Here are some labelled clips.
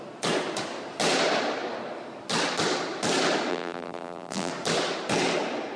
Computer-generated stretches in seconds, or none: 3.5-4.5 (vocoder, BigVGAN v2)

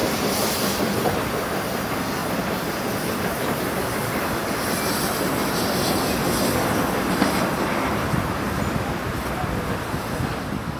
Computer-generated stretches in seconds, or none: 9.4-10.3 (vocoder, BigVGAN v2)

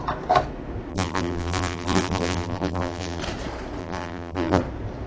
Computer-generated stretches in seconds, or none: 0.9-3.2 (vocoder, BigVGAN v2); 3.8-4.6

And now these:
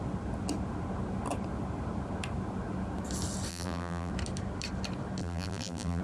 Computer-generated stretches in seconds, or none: 3.5-4.1 (vocoder, BigVGAN v2); 5.2-6.0

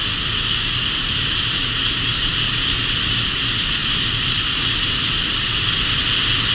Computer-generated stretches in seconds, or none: 1.0-2.3 (vocoder, BigVGAN v2); 3.8-4.4